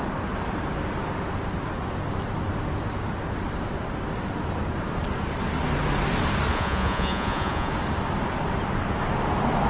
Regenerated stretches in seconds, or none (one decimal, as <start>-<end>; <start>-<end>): 6.5-7.7